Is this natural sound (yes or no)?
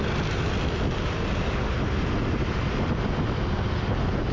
yes